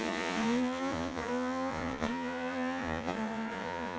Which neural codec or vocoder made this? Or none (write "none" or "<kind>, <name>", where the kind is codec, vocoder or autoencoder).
vocoder, Vocos